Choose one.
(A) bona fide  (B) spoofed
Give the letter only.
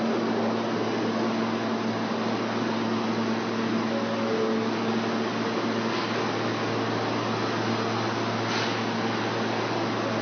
A